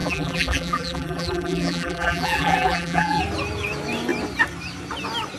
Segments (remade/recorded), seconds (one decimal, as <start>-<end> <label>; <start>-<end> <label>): 0.0-3.2 remade; 3.2-5.4 recorded